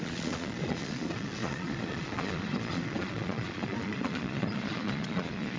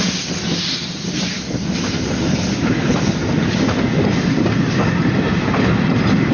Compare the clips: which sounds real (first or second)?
second